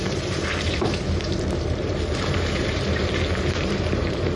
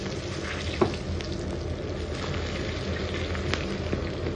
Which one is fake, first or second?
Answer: first